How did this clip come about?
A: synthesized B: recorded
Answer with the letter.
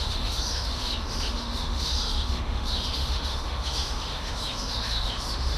A